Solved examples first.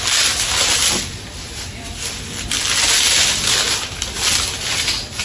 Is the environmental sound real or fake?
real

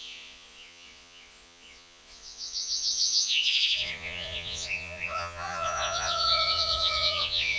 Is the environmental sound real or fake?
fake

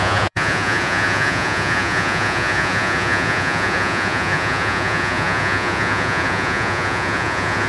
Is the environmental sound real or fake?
fake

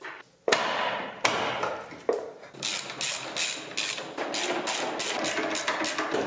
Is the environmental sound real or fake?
real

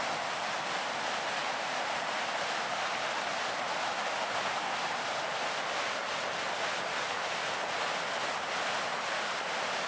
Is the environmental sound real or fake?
real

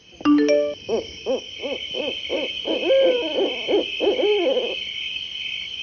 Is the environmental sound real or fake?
real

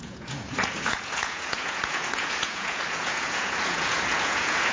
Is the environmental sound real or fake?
fake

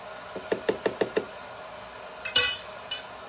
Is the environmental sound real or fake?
real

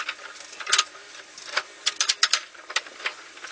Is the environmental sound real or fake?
real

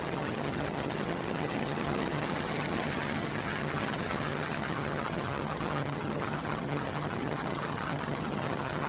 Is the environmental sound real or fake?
fake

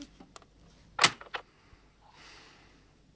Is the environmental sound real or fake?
real